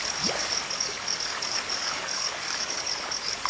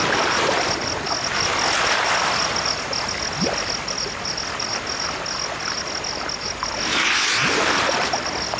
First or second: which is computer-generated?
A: first